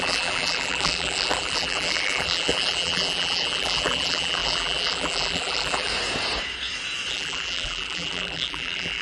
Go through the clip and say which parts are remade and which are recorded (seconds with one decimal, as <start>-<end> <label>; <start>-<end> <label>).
0.0-5.9 remade; 5.9-7.1 recorded; 7.1-9.0 remade